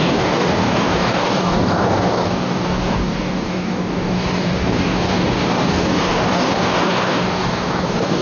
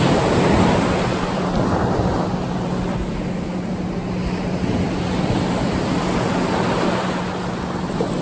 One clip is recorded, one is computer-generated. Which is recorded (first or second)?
second